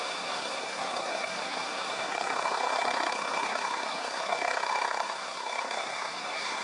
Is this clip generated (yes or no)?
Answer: yes